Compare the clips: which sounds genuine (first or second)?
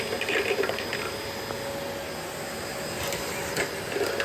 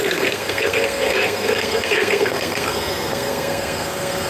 first